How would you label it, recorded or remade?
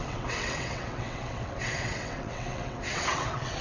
remade